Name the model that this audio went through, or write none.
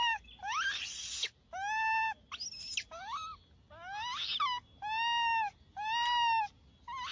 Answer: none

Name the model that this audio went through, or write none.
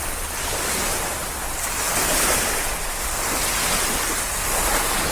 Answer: none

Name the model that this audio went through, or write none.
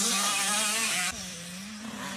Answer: vocoder, BigVGAN v2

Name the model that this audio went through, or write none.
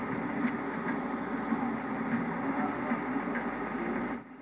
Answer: none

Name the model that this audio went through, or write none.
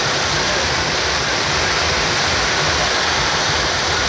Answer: vocoder, BigVGAN v2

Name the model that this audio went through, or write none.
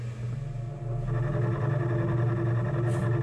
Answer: none